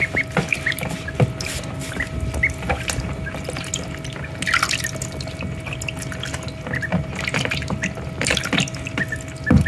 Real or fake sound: real